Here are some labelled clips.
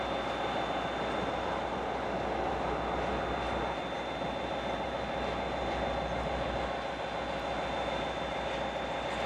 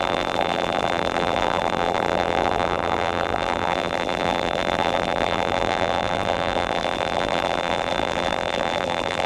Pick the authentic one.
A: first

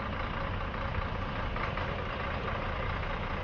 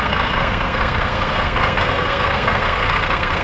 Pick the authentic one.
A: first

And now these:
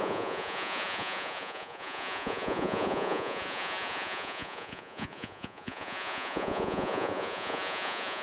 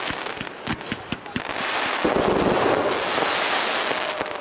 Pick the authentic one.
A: second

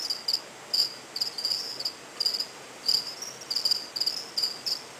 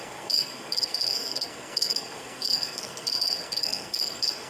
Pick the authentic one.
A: first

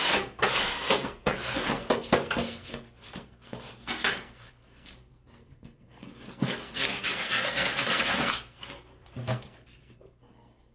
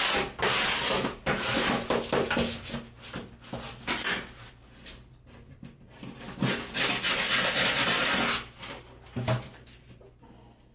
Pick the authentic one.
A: second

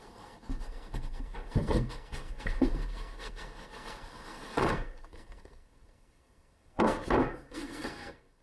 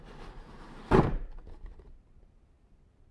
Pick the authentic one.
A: second